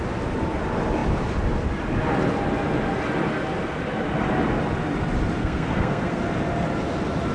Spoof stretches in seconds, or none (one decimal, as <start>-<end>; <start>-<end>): 5.4-6.2